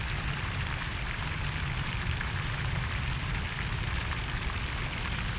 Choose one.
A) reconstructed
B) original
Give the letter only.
A